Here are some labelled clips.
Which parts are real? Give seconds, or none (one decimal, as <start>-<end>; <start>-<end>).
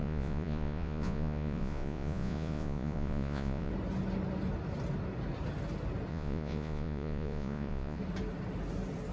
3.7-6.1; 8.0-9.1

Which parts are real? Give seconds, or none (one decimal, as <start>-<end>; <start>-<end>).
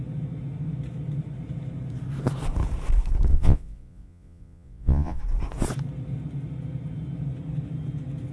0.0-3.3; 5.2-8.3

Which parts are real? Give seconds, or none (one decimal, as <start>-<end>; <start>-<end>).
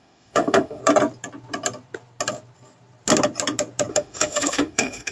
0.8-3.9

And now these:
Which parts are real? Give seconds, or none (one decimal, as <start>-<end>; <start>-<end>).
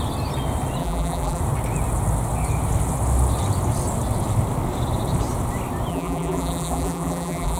0.0-0.8; 1.4-5.9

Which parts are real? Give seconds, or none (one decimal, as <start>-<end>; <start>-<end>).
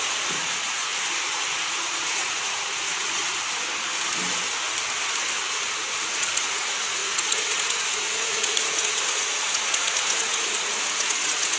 0.9-1.5; 3.2-5.5